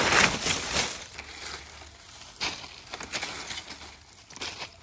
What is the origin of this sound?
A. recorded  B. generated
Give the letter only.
A